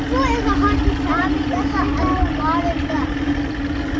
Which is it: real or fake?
real